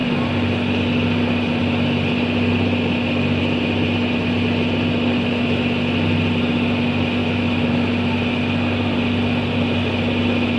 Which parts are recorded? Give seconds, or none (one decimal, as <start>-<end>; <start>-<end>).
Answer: 0.0-7.2; 7.7-10.6